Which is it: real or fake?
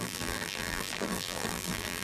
fake